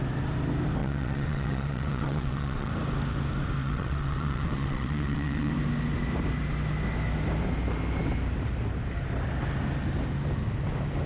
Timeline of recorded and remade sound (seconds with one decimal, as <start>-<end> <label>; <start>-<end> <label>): 0.0-0.8 recorded; 0.8-2.7 remade; 2.7-3.6 recorded; 3.6-5.5 remade; 5.5-11.1 recorded